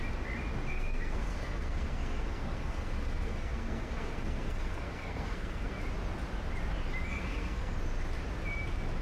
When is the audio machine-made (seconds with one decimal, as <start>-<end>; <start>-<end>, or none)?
0.7-5.8; 7.1-7.7